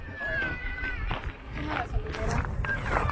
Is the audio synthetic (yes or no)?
no